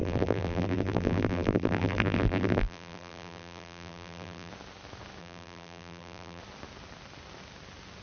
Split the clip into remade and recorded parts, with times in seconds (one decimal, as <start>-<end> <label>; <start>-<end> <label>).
0.0-4.5 remade; 4.5-5.2 recorded; 5.2-6.4 remade; 6.4-8.0 recorded